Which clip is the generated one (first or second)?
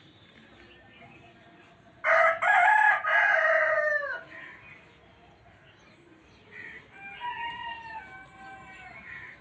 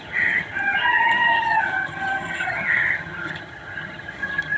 second